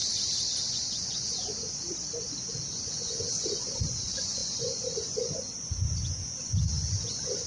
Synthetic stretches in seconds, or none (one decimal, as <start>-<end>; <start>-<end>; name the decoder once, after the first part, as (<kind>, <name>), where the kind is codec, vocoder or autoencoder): 0.7-1.8 (vocoder, Vocos); 2.7-7.5